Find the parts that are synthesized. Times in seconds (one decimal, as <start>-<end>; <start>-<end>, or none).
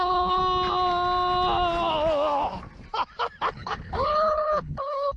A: 0.0-0.4; 3.5-5.2